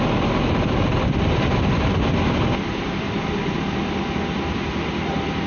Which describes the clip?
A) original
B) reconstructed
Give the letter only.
A